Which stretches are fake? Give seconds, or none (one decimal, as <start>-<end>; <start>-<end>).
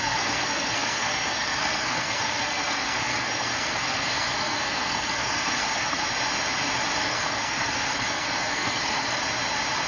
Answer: 0.0-6.0; 7.0-9.2